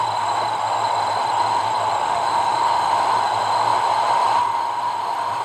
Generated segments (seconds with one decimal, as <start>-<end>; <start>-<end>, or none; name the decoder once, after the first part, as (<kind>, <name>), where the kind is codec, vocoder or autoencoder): 2.0-2.9 (autoencoder, DAC-VAE)